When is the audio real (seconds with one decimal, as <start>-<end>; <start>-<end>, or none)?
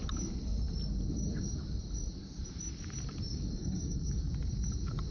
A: 0.0-3.3; 4.2-5.1